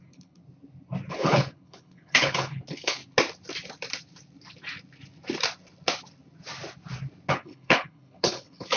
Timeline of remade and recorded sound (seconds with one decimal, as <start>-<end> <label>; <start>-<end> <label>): 0.0-0.4 remade; 0.4-1.1 recorded; 1.1-3.0 remade; 3.0-7.3 recorded; 7.3-8.8 remade